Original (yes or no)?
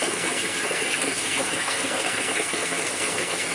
no